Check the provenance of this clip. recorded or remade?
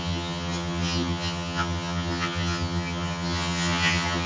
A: remade